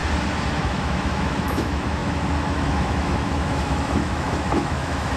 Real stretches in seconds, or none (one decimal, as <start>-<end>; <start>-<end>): 0.0-0.6